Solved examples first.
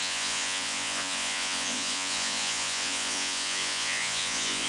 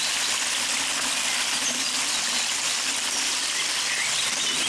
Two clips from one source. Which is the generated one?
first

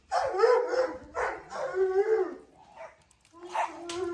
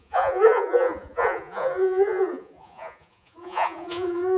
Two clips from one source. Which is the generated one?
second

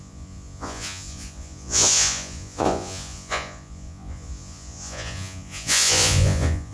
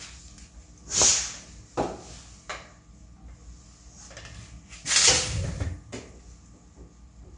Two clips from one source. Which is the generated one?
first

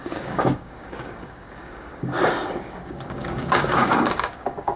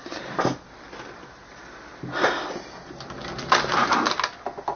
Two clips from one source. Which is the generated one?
first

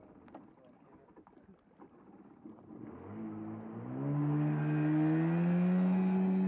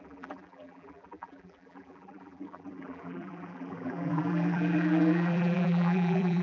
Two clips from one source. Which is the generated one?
second